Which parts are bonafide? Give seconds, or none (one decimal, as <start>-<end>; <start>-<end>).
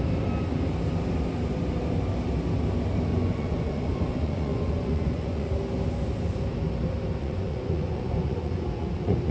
0.0-3.1; 5.5-7.2